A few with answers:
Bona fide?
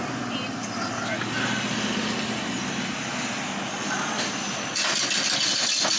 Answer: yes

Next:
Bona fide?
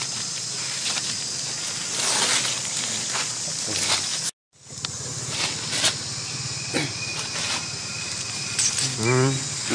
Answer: yes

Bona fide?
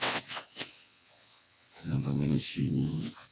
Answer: no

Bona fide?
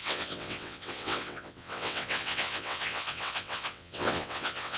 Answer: no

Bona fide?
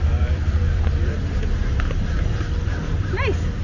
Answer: yes